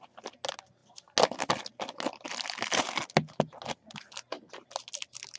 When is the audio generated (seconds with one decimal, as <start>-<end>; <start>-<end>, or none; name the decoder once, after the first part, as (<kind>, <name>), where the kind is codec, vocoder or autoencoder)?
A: none